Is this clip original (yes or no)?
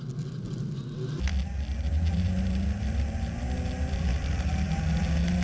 yes